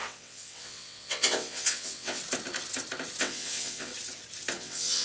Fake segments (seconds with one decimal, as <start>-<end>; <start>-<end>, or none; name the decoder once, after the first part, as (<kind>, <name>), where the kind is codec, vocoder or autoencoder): 0.0-2.2 (vocoder, WaveNeXt); 3.2-3.9; 4.6-5.0

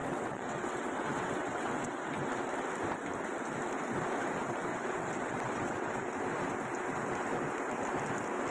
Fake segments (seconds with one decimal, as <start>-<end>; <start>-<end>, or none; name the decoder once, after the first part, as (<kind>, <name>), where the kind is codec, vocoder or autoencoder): 0.0-2.3 (vocoder, WaveNeXt); 4.7-6.1

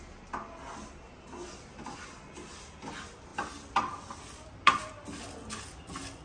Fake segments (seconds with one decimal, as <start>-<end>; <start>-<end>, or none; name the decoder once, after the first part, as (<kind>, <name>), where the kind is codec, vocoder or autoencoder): none

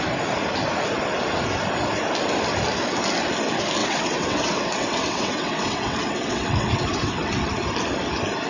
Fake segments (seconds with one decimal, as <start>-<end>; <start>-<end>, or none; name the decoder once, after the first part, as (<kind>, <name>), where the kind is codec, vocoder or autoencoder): 3.8-7.5 (vocoder, WaveNeXt)

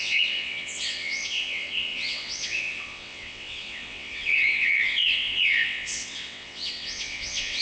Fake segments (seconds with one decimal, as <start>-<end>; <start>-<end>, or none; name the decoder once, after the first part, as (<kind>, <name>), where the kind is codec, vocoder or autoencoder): 0.0-7.6 (vocoder, WaveNeXt)

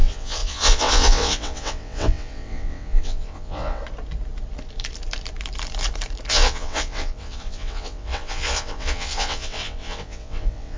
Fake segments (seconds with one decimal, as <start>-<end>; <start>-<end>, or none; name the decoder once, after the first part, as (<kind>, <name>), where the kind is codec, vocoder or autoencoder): 0.0-3.8 (vocoder, WaveNeXt); 6.3-10.8